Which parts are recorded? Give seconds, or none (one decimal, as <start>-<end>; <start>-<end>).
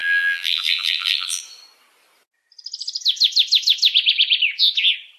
1.4-5.2